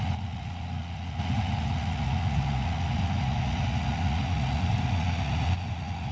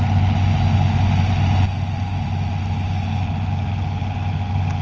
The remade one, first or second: first